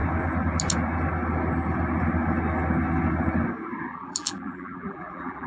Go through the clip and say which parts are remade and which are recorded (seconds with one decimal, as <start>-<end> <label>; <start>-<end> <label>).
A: 0.0-3.9 recorded; 3.9-5.5 remade